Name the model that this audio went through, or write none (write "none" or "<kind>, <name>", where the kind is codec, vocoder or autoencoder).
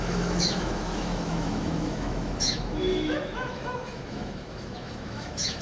autoencoder, DAC-VAE